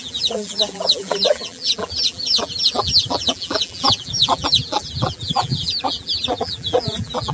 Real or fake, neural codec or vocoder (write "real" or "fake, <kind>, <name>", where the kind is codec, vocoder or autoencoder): fake, vocoder, BigVGAN v2